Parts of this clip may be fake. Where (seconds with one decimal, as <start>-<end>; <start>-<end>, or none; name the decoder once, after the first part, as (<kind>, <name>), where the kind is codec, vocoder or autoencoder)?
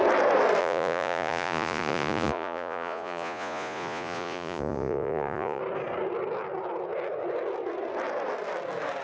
0.6-5.6 (vocoder, Vocos)